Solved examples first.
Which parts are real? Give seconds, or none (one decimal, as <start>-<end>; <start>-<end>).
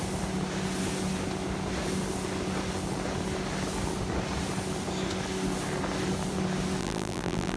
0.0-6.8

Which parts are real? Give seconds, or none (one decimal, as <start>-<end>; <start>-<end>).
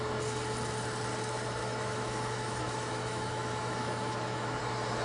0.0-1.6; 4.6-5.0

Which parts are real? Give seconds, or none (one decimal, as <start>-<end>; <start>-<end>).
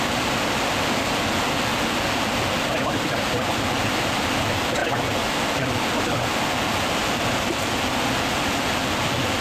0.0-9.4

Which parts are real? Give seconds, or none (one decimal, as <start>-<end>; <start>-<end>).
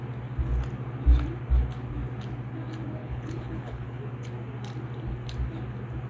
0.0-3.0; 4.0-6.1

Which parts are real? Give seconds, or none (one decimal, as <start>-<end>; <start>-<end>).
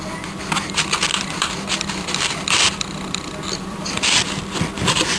0.0-1.1; 4.0-5.2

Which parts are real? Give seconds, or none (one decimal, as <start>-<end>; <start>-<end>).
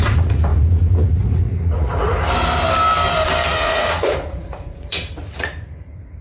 2.1-3.5